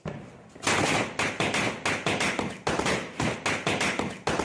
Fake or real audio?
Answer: real